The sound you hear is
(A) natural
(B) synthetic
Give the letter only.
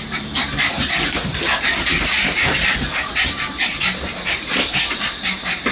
B